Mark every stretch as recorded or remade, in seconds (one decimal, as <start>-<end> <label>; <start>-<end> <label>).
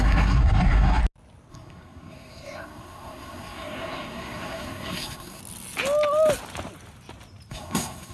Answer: 0.0-1.0 remade; 1.0-1.5 recorded; 1.5-5.4 remade; 5.4-7.5 recorded; 7.5-8.1 remade